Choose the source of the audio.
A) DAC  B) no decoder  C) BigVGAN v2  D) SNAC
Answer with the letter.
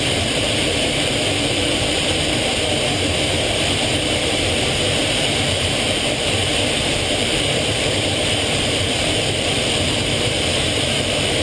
C